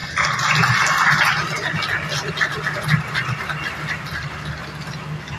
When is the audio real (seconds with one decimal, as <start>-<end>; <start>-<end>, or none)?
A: 0.0-5.4